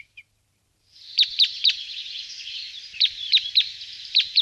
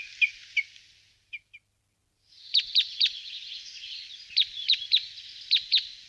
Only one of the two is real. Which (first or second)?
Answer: second